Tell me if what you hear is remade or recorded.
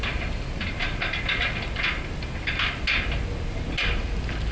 recorded